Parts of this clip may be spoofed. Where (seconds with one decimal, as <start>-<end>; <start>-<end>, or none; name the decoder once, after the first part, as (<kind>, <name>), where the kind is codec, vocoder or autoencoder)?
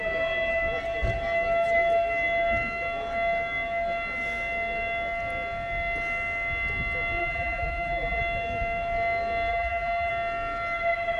7.2-8.2 (vocoder, BigVGAN v2); 9.5-10.1